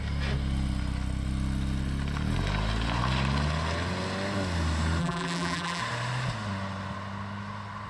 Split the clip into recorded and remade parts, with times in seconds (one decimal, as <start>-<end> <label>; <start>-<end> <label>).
0.0-5.0 recorded; 5.0-5.8 remade; 5.8-7.9 recorded